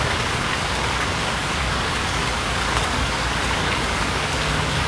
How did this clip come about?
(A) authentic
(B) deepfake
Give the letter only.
B